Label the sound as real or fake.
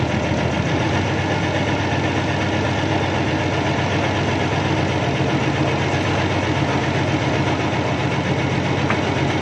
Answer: real